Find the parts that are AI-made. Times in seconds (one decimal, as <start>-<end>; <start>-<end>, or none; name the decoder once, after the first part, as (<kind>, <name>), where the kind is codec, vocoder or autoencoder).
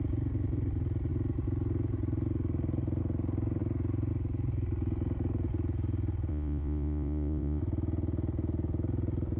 6.3-7.6 (vocoder, Vocos)